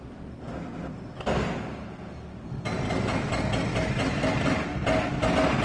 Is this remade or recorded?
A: recorded